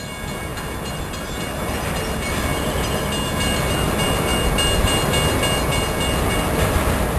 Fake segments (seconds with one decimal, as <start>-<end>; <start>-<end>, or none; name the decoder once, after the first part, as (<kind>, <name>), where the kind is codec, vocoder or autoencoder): none